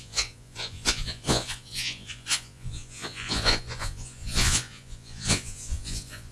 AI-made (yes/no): yes